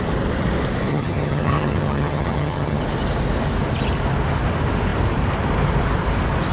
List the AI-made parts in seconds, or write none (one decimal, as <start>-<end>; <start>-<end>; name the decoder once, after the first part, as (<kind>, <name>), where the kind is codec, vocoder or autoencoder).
0.9-2.8 (vocoder, HiFi-GAN)